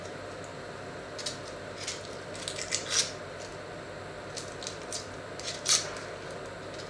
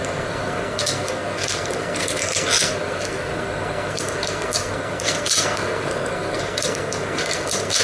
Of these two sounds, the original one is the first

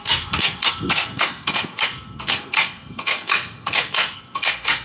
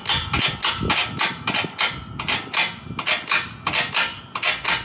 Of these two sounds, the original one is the second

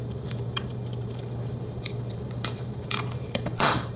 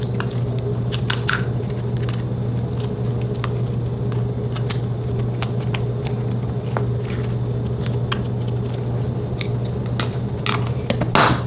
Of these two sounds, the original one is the second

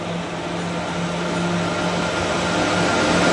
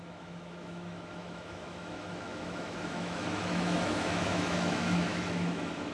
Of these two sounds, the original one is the first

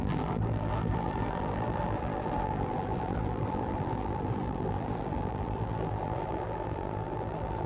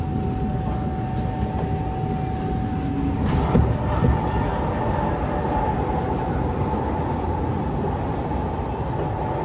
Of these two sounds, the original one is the second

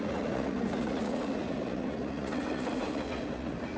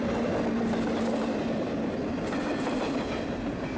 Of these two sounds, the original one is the second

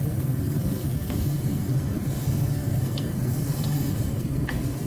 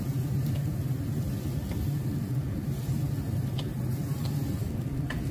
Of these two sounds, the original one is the second